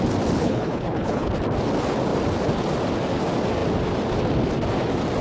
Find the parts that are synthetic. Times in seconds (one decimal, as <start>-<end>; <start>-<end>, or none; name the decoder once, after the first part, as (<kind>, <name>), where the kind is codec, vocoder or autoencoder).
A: 0.4-1.3 (codec, HILCodec)